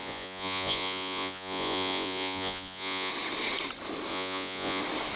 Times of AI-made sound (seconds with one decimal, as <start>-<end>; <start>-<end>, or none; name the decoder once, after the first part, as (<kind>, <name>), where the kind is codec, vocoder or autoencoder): 0.0-3.1 (vocoder, Vocos); 4.1-4.8